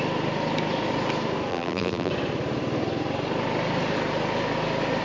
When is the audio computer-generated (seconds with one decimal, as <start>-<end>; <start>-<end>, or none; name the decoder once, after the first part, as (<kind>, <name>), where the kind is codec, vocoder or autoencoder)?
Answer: 1.5-2.1 (vocoder, BigVGAN v2)